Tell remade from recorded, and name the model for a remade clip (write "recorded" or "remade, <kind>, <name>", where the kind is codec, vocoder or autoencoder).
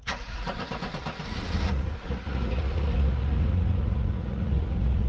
remade, vocoder, Vocos